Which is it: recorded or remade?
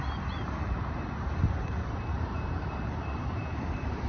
remade